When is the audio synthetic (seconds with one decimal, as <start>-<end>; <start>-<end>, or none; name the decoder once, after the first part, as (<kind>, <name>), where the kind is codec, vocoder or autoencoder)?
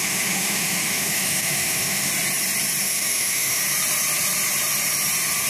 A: 0.0-2.1 (autoencoder, DAC-VAE); 2.8-3.6